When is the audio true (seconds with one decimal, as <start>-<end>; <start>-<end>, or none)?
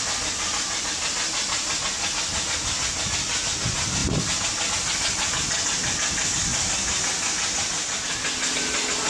0.0-9.1